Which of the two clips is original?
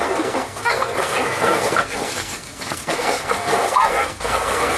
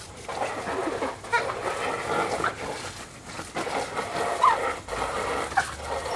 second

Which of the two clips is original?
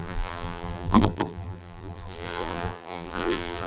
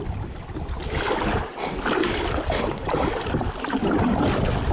second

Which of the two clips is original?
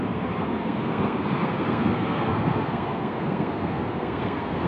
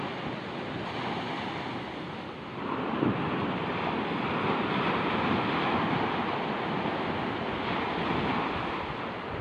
second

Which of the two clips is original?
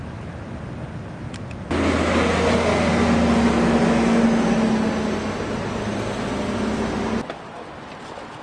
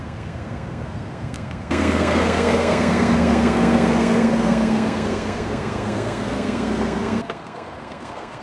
first